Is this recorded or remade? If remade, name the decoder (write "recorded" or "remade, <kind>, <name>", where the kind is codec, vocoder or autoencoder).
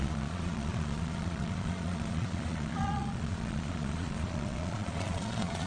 remade, vocoder, Vocos